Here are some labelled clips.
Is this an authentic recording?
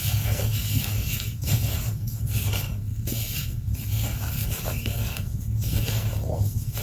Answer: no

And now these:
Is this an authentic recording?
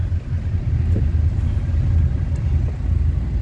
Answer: yes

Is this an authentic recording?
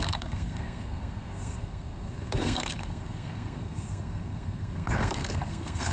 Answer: no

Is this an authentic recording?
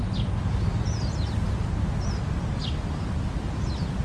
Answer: yes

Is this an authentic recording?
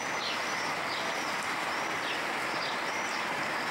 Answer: yes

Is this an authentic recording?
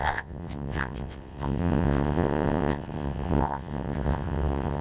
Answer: no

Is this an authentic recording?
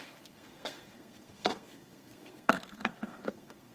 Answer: no